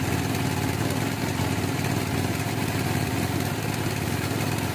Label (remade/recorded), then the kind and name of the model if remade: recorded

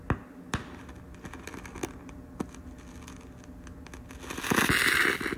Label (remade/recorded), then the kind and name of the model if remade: recorded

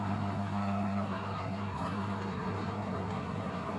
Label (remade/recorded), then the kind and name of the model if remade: remade, codec, SNAC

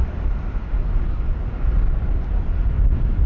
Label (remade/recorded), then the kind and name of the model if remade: recorded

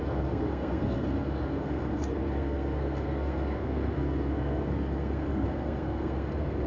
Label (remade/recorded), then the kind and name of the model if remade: remade, codec, SNAC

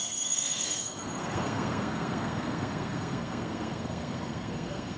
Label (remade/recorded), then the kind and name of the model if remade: remade, codec, SNAC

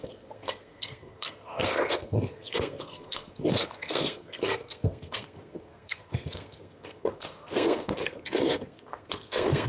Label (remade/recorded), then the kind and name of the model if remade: remade, codec, SNAC